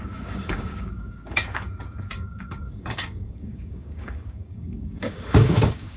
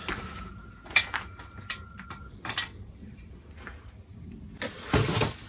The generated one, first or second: first